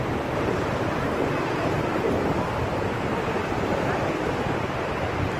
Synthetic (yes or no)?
no